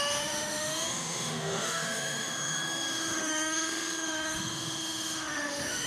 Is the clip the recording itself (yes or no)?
no